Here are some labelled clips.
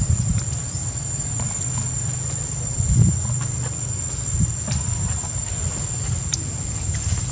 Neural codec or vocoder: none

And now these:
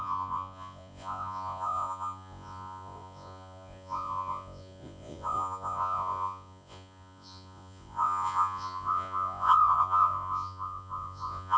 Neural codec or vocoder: vocoder, Vocos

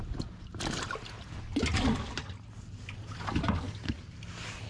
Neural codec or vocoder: none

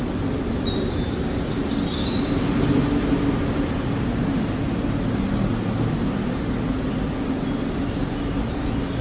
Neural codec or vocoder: none